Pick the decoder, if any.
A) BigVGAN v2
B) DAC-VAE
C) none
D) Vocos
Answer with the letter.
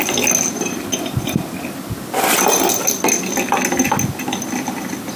C